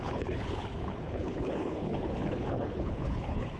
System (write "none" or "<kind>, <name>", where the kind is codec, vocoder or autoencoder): codec, HILCodec